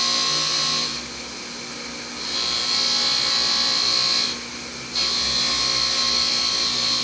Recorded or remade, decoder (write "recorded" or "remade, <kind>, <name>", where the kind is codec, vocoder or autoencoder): recorded